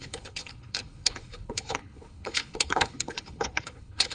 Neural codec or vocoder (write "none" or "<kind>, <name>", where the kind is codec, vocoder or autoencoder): codec, HILCodec